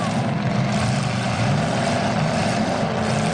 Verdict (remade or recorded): recorded